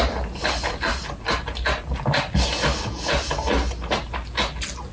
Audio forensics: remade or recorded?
recorded